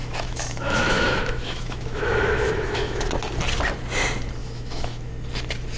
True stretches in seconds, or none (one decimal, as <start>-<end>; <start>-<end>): 3.1-4.4; 5.1-5.8